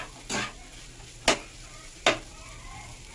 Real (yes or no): yes